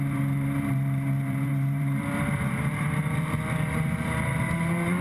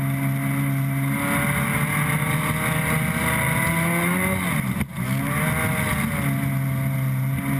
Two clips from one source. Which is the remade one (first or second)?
first